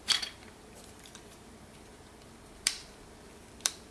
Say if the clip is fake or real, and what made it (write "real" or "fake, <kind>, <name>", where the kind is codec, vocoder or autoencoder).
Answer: fake, vocoder, BigVGAN v2